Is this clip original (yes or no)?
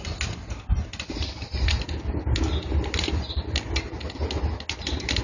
yes